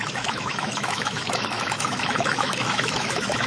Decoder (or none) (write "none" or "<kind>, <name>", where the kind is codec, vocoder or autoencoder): autoencoder, DAC-VAE